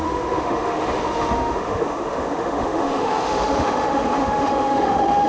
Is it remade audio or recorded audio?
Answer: remade